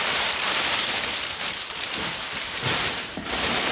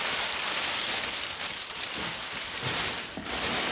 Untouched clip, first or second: second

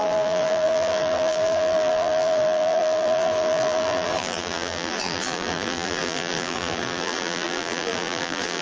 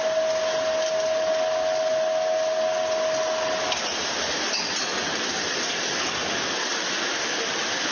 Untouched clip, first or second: second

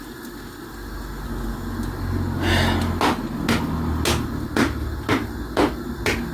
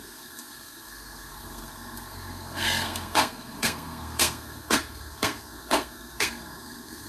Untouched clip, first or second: first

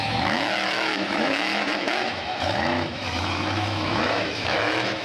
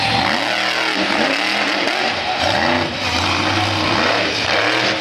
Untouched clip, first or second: second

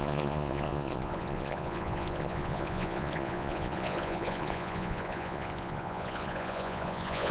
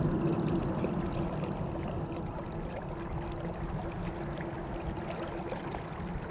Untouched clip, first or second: second